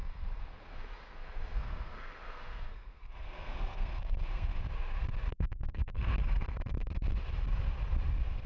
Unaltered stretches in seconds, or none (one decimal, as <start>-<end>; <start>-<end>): 4.6-5.3; 6.9-8.5